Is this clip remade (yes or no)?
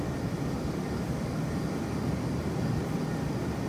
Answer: no